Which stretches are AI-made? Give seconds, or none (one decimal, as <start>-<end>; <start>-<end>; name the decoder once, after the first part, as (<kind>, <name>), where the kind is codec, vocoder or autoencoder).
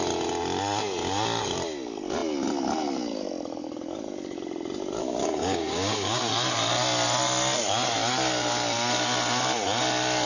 5.0-6.2 (codec, DAC)